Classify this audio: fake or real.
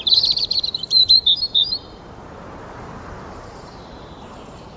fake